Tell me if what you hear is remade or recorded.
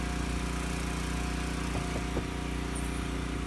recorded